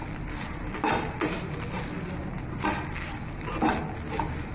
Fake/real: real